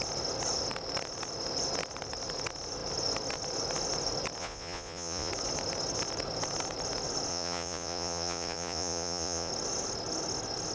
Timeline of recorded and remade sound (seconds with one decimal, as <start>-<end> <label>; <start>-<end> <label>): 0.0-4.4 recorded; 4.4-5.3 remade; 5.3-7.3 recorded; 7.3-9.5 remade; 9.5-10.7 recorded